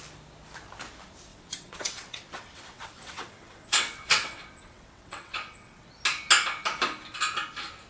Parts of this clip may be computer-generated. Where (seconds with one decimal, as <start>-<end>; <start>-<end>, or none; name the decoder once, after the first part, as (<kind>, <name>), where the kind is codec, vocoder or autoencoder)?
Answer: 1.3-5.9 (vocoder, WaveNeXt)